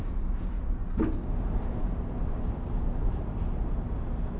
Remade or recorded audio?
recorded